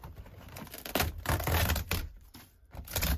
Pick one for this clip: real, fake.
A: fake